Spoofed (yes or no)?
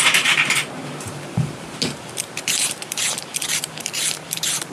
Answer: yes